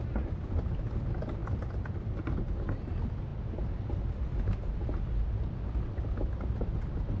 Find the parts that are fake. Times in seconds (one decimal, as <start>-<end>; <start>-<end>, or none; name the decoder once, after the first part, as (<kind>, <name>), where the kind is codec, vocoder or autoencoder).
1.4-2.5 (vocoder, BigVGAN v2)